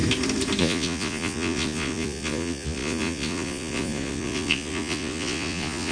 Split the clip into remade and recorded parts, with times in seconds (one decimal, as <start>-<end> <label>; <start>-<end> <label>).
0.0-0.6 recorded; 0.6-5.9 remade